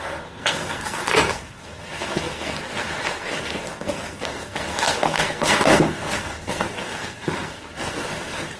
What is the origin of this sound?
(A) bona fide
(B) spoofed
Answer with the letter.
B